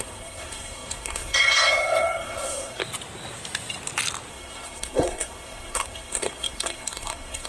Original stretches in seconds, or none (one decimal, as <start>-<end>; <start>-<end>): 2.8-4.3